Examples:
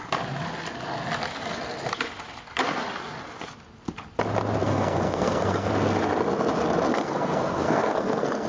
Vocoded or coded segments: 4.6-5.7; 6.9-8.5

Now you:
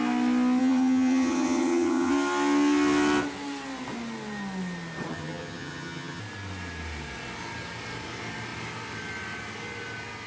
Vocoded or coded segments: 0.6-2.1; 5.1-6.2

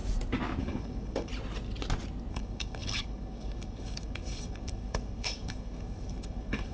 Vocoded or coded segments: 0.6-1.3; 2.3-6.7

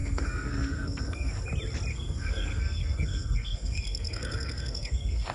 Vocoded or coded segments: 0.0-1.3; 1.9-5.3

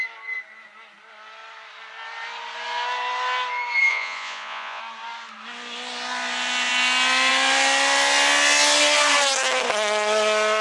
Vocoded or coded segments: 3.9-4.8

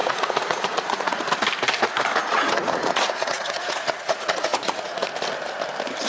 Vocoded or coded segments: 0.0-1.2; 2.2-5.1